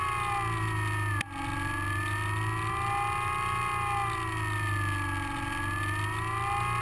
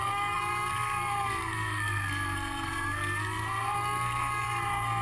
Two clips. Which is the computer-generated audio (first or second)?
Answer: second